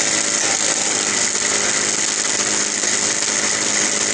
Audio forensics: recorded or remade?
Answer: recorded